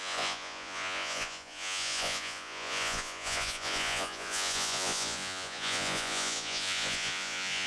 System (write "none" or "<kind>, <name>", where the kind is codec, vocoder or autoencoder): vocoder, Vocos